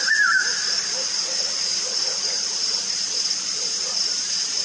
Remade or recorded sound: recorded